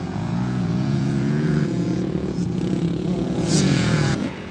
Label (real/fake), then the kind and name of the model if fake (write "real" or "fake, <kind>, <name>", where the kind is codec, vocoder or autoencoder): fake, vocoder, Vocos